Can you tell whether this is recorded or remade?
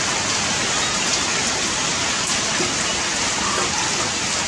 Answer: recorded